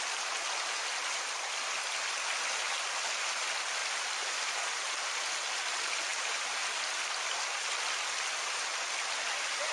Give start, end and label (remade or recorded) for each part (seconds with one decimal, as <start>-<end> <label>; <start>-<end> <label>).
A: 0.0-3.8 recorded; 3.8-5.1 remade; 5.1-6.1 recorded; 6.1-6.7 remade; 6.7-9.7 recorded